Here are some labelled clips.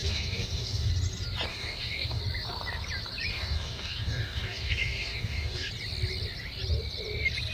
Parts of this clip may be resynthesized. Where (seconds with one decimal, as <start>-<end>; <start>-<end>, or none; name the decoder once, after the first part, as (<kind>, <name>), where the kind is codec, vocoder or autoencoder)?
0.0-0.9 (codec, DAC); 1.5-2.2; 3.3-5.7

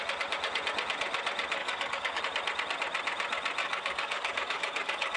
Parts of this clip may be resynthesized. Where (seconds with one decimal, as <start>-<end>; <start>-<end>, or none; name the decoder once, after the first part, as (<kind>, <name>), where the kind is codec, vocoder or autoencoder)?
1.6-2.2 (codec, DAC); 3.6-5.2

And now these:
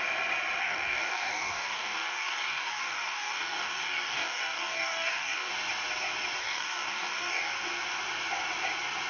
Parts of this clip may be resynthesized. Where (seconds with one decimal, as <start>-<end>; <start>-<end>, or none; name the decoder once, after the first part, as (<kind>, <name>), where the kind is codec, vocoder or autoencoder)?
0.6-5.5 (codec, DAC); 6.4-7.5

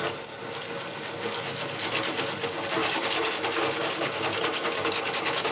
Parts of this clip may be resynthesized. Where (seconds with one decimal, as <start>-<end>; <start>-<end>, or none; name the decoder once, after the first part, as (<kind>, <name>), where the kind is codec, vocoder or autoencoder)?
2.8-5.5 (codec, DAC)